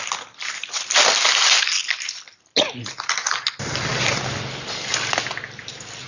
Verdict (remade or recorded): recorded